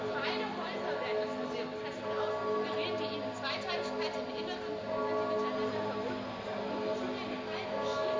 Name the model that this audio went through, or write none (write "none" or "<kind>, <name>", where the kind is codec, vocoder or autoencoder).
none